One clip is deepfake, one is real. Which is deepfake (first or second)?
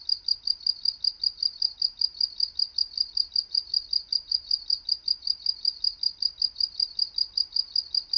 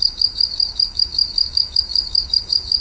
second